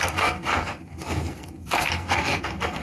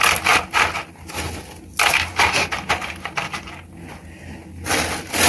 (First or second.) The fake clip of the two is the first